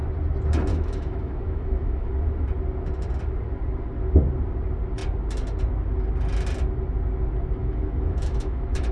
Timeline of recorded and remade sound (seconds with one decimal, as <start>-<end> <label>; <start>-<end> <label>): 0.0-0.7 recorded; 0.7-2.1 remade; 2.1-7.6 recorded; 7.6-8.9 remade